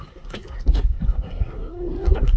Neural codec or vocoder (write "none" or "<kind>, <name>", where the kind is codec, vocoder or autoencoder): codec, SNAC